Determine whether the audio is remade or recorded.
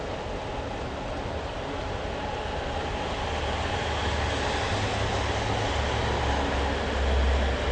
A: recorded